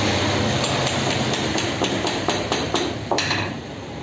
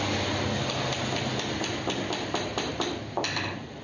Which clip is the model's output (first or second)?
first